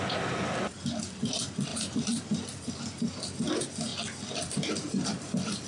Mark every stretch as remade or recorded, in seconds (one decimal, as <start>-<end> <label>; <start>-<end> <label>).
0.0-3.9 remade; 3.9-4.5 recorded; 4.5-5.7 remade

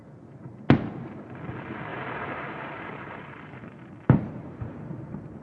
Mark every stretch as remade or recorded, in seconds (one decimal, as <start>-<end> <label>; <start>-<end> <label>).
0.0-1.9 recorded; 1.9-5.4 remade

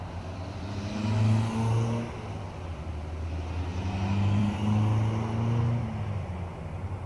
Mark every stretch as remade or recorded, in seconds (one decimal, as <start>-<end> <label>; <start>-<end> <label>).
0.0-7.1 recorded

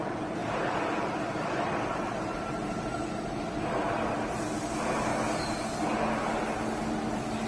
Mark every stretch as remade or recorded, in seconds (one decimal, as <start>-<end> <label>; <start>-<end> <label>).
0.0-0.4 recorded; 0.4-3.4 remade; 3.4-7.5 recorded

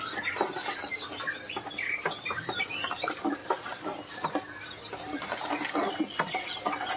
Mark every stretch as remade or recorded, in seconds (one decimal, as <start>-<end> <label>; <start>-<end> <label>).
0.0-3.4 remade; 3.4-5.0 recorded; 5.0-7.0 remade

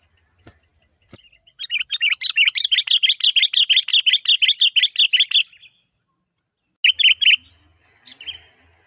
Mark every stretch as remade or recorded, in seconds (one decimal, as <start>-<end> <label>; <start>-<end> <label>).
0.0-0.7 recorded; 0.7-2.8 remade; 2.8-8.9 recorded